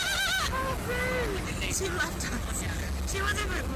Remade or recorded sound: recorded